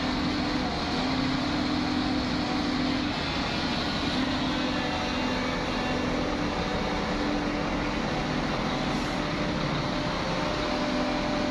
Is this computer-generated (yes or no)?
no